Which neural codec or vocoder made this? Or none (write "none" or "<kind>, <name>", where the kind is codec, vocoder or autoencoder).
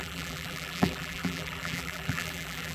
vocoder, BigVGAN v2